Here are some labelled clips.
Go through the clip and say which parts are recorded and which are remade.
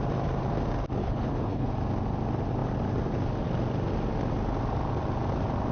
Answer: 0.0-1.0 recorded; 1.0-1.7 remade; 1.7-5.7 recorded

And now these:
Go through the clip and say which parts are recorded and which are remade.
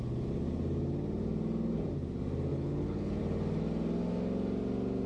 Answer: 0.0-2.5 recorded; 2.5-3.2 remade; 3.2-5.1 recorded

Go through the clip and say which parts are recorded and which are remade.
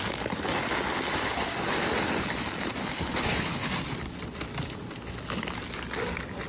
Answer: 0.0-2.8 recorded; 2.8-3.7 remade; 3.7-6.5 recorded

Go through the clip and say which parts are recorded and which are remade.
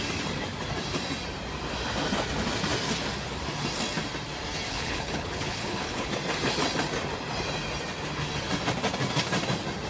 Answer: 0.0-4.7 recorded; 4.7-6.1 remade; 6.1-9.9 recorded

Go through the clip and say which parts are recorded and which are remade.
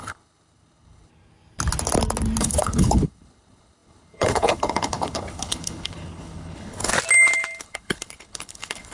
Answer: 0.0-1.1 remade; 1.1-2.4 recorded; 2.4-6.9 remade; 6.9-7.6 recorded; 7.6-8.9 remade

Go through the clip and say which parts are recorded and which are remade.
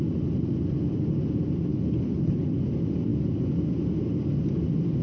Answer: 0.0-1.7 recorded; 1.7-2.6 remade; 2.6-5.0 recorded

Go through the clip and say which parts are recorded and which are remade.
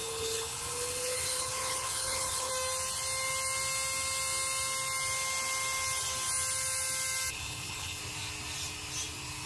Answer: 0.0-2.5 remade; 2.5-7.3 recorded; 7.3-8.0 remade; 8.0-9.5 recorded